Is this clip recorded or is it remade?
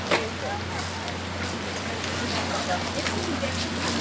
recorded